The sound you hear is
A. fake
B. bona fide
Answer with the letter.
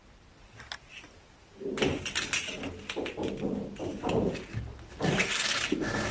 B